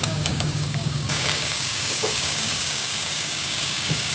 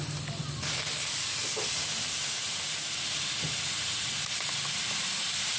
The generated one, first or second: first